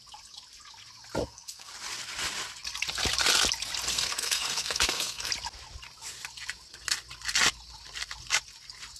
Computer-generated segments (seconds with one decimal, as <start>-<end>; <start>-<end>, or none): 1.2-1.7; 3.9-5.3